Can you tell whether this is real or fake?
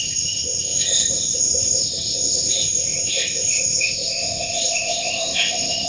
fake